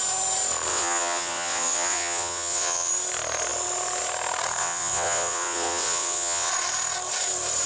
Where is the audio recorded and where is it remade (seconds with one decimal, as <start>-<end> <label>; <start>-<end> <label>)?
0.0-0.7 recorded; 0.7-2.9 remade; 2.9-4.6 recorded; 4.6-6.5 remade; 6.5-7.7 recorded